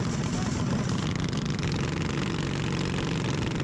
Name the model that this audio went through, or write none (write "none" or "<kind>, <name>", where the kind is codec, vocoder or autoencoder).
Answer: none